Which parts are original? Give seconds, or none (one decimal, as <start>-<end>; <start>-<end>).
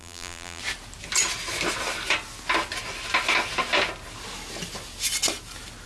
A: 0.6-5.9